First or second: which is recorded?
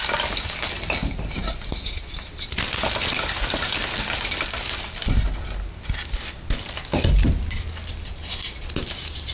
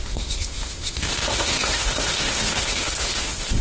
first